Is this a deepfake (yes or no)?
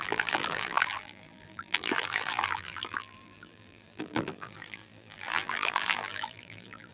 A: yes